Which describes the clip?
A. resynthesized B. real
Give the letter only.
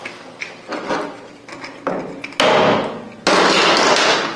B